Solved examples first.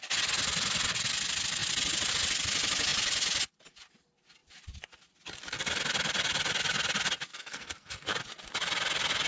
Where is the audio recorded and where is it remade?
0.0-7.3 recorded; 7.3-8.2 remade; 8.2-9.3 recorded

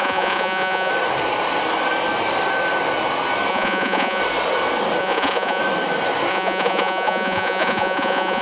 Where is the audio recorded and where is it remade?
0.0-0.9 remade; 0.9-3.5 recorded; 3.5-4.2 remade; 4.2-5.0 recorded; 5.0-5.6 remade; 5.6-6.3 recorded; 6.3-8.4 remade

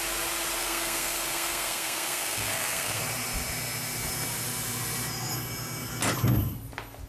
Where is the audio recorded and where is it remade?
0.0-0.6 recorded; 0.6-3.0 remade; 3.0-7.1 recorded